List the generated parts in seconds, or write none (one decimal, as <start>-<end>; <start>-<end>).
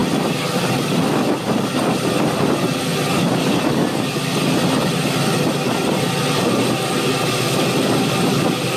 none